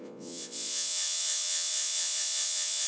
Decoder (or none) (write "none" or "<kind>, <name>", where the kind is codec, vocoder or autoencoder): vocoder, Vocos